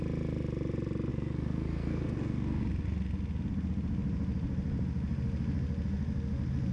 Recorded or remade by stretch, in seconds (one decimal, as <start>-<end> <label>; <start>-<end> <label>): 0.0-1.1 recorded; 1.1-2.6 remade; 2.6-6.7 recorded